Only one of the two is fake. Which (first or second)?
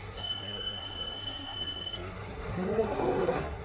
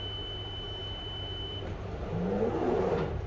first